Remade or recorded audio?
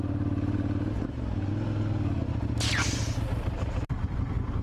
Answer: recorded